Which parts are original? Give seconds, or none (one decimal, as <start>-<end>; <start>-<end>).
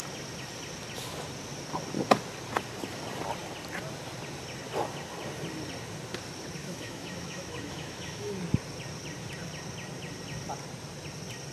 0.0-6.6; 8.4-11.5